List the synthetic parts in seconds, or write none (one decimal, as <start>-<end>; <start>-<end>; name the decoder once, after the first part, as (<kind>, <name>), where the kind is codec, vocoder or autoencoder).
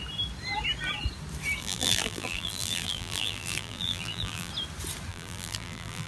1.6-4.5 (vocoder, BigVGAN v2); 5.1-6.1